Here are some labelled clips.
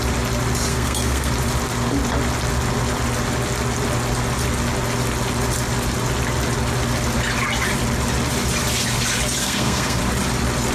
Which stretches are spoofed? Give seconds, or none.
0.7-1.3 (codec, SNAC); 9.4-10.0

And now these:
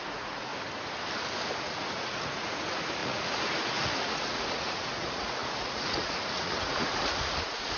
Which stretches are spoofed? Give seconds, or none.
0.0-0.5 (vocoder, Vocos); 1.6-7.8

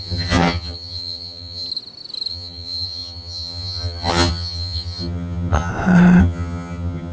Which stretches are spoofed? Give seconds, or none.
0.0-1.7 (vocoder, HiFi-GAN); 2.3-5.7; 6.2-7.1

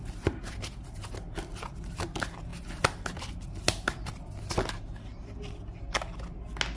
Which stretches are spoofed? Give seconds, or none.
none